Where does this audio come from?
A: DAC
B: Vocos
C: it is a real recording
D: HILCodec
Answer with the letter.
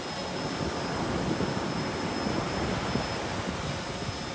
C